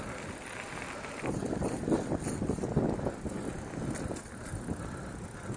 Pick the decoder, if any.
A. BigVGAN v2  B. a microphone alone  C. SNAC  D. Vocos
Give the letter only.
B